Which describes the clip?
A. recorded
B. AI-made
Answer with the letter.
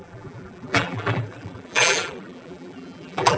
B